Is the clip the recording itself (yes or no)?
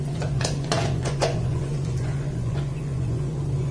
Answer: no